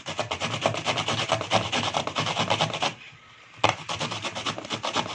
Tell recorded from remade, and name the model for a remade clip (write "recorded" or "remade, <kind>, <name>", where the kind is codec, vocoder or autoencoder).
recorded